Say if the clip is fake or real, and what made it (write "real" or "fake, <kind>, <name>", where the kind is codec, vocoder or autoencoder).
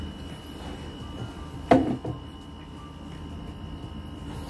real